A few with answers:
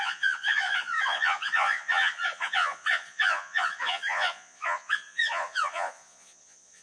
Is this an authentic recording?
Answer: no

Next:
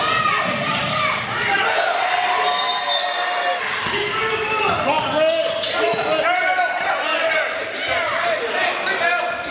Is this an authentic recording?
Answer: yes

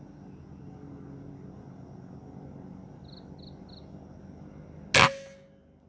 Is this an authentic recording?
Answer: yes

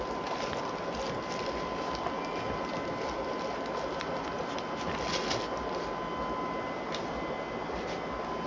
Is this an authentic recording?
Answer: yes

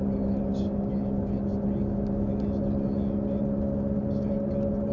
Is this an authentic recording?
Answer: yes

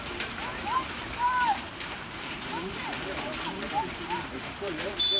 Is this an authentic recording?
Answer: no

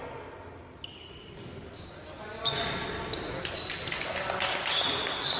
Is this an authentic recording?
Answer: yes